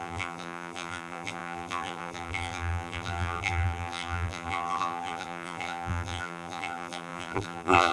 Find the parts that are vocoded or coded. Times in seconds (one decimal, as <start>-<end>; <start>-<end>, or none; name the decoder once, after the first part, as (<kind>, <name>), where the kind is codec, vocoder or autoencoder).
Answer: 0.0-7.9 (vocoder, BigVGAN v2)